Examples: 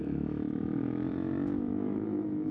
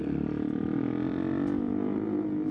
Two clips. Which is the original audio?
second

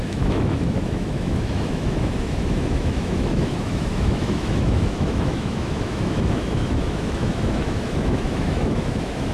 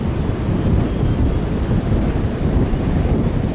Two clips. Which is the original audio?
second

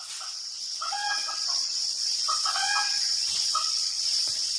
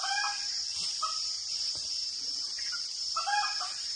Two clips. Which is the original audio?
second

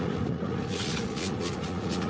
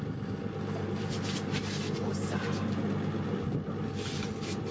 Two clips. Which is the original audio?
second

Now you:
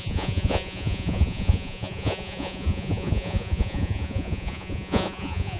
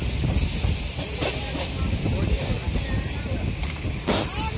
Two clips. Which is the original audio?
second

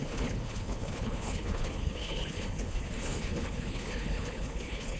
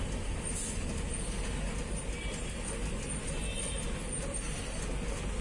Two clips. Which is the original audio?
second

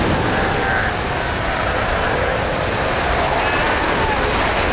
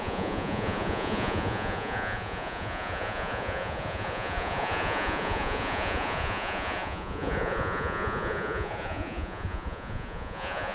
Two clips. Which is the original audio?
first